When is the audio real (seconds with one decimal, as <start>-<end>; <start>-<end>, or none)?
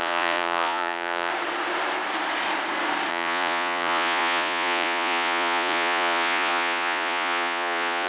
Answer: 1.3-3.1